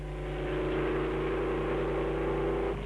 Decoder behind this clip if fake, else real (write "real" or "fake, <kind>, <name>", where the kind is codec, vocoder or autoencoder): real